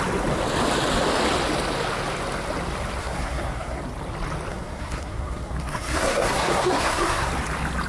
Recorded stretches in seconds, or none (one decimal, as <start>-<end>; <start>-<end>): 0.0-3.0; 3.8-4.5; 7.3-7.9